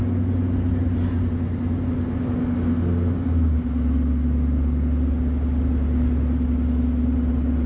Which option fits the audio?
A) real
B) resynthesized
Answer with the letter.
A